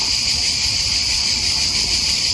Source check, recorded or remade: remade